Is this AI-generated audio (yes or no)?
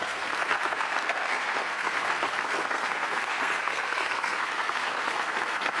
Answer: yes